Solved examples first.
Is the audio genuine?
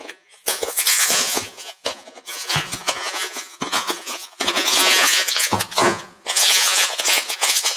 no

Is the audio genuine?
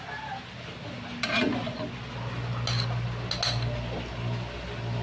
yes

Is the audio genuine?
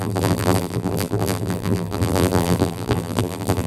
no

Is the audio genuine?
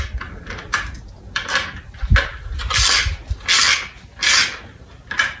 yes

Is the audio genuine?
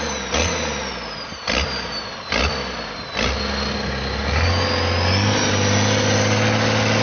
yes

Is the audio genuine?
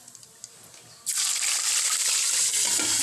yes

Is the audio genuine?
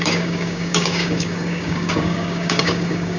no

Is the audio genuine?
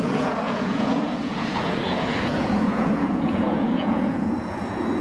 no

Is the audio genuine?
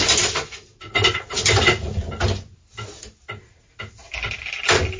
yes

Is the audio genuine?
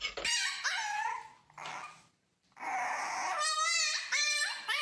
yes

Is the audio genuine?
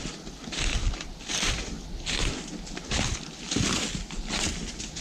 yes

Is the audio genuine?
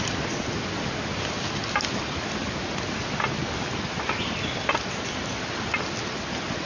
yes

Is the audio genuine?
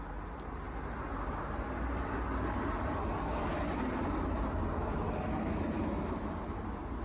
yes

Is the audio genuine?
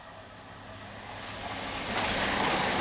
yes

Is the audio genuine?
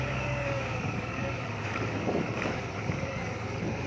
no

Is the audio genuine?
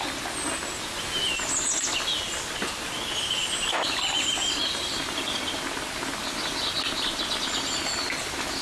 yes